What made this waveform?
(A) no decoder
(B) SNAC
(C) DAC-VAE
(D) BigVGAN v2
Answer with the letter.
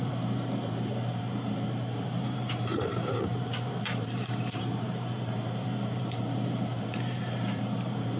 D